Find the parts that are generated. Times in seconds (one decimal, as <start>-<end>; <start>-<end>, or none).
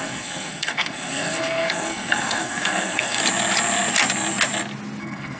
0.0-3.2; 5.0-5.4